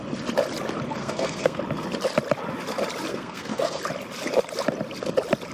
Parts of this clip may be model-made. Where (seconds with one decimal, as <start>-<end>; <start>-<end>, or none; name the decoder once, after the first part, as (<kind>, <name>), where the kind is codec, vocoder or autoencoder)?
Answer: 1.0-1.6 (codec, SNAC); 3.1-3.8